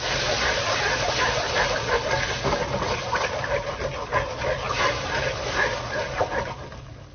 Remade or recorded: recorded